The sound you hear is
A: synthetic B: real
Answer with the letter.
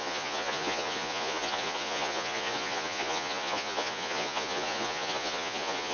A